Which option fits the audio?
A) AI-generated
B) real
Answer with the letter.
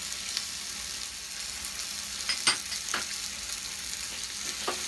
B